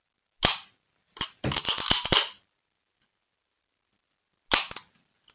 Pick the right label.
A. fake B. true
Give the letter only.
B